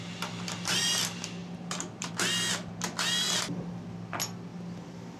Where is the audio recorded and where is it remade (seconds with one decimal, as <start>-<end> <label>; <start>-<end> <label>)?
0.0-1.4 recorded; 1.4-2.1 remade; 2.1-4.5 recorded; 4.5-5.2 remade